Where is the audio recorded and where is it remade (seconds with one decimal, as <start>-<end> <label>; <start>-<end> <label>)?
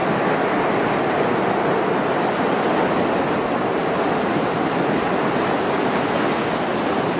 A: 0.0-7.2 recorded